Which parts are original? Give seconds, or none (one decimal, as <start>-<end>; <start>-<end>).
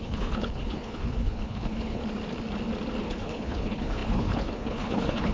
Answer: 2.0-3.0